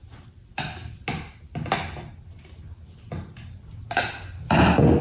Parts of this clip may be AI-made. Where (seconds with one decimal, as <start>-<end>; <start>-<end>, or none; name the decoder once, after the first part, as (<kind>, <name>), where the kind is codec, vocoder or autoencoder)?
none